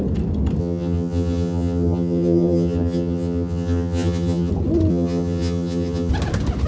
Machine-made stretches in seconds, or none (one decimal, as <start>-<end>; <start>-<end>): 0.6-4.5; 4.9-6.1